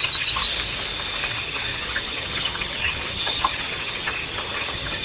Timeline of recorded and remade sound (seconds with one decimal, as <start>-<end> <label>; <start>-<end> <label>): 0.0-0.4 remade; 0.4-1.3 recorded; 1.3-5.0 remade